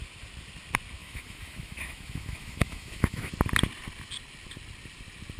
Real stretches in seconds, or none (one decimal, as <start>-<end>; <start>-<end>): 0.0-1.0; 3.3-5.4